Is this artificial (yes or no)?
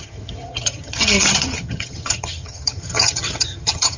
yes